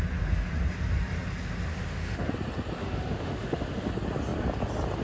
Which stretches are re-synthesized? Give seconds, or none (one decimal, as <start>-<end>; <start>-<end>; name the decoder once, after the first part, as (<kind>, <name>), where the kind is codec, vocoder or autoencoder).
1.7-2.3 (autoencoder, DAC-VAE); 2.8-3.9